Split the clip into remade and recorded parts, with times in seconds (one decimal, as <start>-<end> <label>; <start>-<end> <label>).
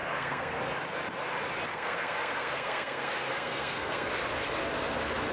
0.0-0.6 remade; 0.6-1.7 recorded; 1.7-4.1 remade; 4.1-5.3 recorded